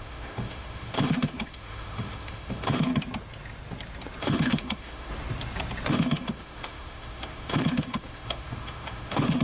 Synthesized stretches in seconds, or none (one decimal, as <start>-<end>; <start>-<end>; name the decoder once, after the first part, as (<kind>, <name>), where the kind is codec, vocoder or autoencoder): 0.0-2.9 (autoencoder, DAC-VAE); 4.2-5.1; 5.9-9.4